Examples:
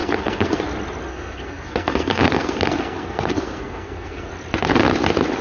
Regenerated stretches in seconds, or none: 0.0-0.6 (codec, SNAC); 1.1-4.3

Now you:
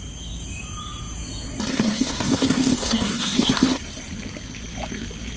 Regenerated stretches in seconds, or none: 1.7-3.8 (codec, SNAC)

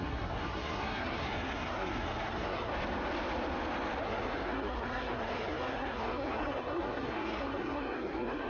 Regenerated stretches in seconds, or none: 0.0-2.7 (codec, SNAC); 4.0-8.5

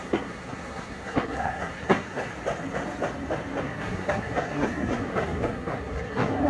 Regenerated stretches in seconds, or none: 0.0-2.3 (codec, SNAC); 3.6-6.5